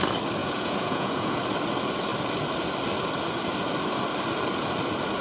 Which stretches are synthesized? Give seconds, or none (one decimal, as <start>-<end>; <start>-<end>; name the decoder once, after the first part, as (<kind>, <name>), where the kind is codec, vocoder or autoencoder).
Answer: 0.4-1.4 (vocoder, Vocos)